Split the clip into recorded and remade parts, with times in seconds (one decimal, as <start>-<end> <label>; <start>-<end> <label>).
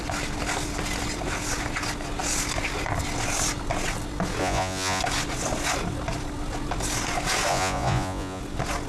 0.0-4.4 recorded; 4.4-5.0 remade; 5.0-7.5 recorded; 7.5-8.4 remade; 8.4-8.9 recorded